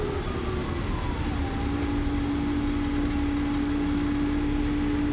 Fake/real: real